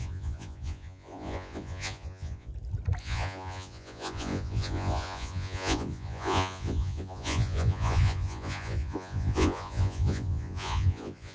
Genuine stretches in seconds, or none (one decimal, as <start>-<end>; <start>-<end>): 2.5-3.0

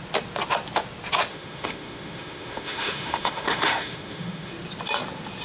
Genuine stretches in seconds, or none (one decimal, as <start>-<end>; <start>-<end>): 0.0-1.3; 4.5-5.4

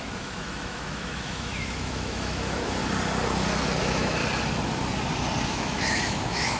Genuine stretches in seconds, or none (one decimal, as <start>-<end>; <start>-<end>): 2.8-3.8; 4.2-5.5

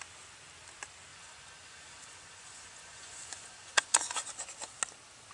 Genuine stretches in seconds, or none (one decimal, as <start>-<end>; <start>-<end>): 0.0-1.1; 4.3-5.3

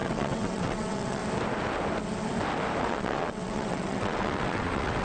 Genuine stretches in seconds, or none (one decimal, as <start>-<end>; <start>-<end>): 1.2-2.8

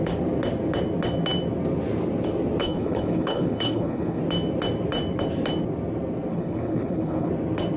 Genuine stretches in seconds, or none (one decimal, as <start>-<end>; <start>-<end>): 0.0-2.6; 4.2-6.3; 7.3-7.8

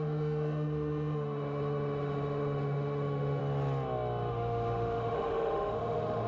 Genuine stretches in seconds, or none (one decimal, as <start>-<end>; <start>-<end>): 3.4-4.3